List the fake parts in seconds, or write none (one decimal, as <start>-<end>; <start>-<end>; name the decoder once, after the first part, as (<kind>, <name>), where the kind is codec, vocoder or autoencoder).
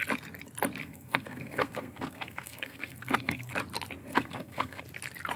0.8-3.5 (codec, SNAC); 4.0-4.8